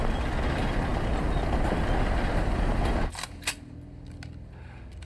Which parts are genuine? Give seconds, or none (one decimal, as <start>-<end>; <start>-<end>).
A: 0.0-5.1